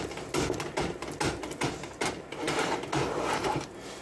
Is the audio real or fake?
real